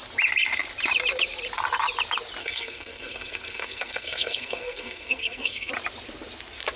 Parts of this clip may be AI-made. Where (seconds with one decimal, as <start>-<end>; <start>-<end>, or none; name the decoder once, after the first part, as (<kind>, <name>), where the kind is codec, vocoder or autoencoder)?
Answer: 2.4-5.7 (codec, SNAC)